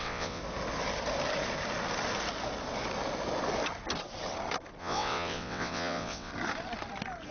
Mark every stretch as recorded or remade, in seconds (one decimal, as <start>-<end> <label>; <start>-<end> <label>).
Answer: 0.0-0.4 remade; 0.4-4.8 recorded; 4.8-6.3 remade; 6.3-7.3 recorded